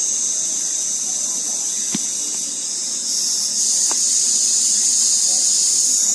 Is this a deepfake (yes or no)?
no